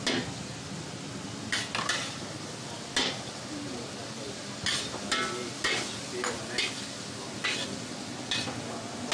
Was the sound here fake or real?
real